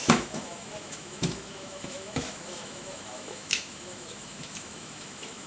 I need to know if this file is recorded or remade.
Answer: remade